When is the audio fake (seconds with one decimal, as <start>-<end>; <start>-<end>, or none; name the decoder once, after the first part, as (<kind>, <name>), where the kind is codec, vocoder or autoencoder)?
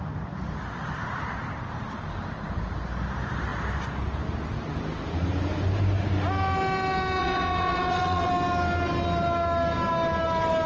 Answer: 7.2-8.3 (vocoder, WaveNeXt)